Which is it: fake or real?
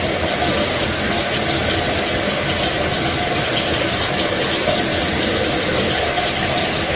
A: real